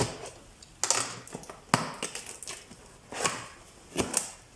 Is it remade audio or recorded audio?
recorded